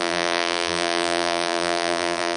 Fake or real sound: fake